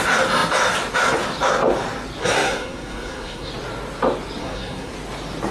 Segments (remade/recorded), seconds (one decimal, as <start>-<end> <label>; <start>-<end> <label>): 0.0-2.2 recorded; 2.2-3.5 remade; 3.5-4.4 recorded; 4.4-4.9 remade; 4.9-5.5 recorded